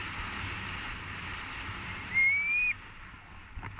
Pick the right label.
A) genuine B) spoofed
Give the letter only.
A